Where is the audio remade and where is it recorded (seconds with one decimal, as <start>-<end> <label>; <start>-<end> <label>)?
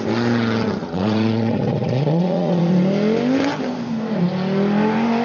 0.0-0.8 recorded; 0.8-2.7 remade; 2.7-5.2 recorded